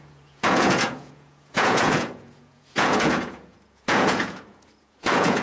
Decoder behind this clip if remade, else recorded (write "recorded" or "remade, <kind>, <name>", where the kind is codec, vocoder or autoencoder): remade, vocoder, Vocos